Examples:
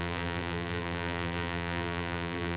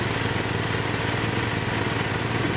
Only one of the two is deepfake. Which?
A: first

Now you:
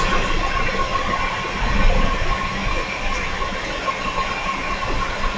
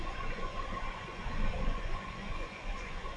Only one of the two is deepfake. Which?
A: second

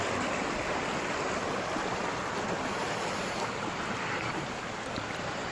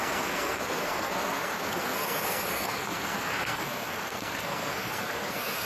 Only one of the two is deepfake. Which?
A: second